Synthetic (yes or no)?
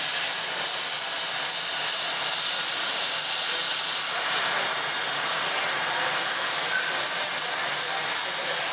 no